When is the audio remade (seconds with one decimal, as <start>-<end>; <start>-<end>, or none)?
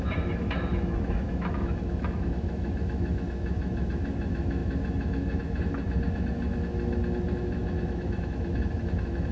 0.0-9.3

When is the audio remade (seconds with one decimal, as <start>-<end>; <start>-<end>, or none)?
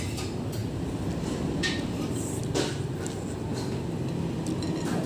none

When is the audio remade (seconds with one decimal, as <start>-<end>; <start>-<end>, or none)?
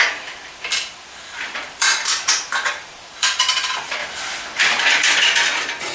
0.0-4.0; 4.6-5.9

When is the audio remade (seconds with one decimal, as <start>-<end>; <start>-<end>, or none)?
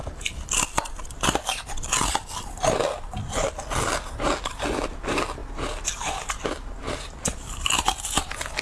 none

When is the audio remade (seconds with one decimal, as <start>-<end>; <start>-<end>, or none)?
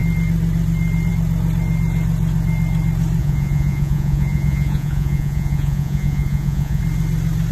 3.2-6.8